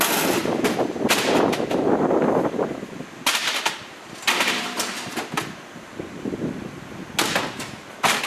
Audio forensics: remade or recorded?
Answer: recorded